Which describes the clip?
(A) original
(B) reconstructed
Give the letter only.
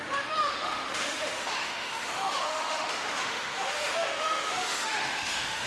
B